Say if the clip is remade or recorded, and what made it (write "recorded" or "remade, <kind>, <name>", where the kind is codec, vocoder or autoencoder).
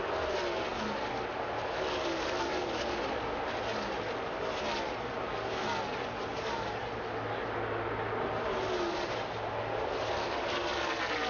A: recorded